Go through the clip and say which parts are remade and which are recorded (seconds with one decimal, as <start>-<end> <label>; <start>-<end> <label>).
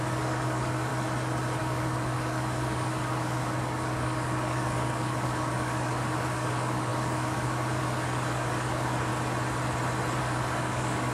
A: 0.0-0.9 remade; 0.9-1.6 recorded; 1.6-9.1 remade; 9.1-10.2 recorded; 10.2-11.1 remade